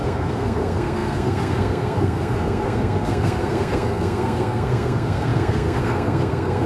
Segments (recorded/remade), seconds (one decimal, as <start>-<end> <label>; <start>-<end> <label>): 0.0-6.7 remade